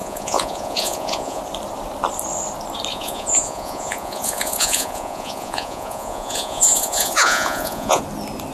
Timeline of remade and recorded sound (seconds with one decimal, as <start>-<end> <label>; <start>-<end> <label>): 0.0-1.4 remade; 1.4-2.9 recorded; 2.9-8.0 remade; 8.0-8.5 recorded

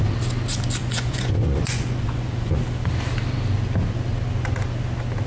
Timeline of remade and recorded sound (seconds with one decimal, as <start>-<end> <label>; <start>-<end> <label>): 0.0-0.8 recorded; 0.8-2.5 remade; 2.5-5.3 recorded

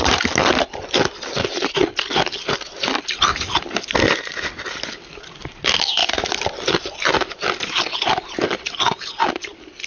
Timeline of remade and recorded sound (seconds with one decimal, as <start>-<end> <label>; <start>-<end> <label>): 0.0-9.9 recorded